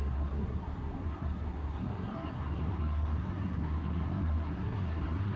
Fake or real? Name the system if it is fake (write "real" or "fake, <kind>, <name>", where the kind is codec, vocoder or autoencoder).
fake, codec, SNAC